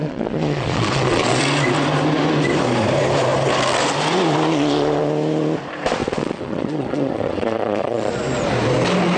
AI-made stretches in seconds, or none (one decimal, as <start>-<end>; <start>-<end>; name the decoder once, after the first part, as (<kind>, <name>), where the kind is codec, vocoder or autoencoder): 0.0-1.4 (vocoder, Vocos); 6.0-8.1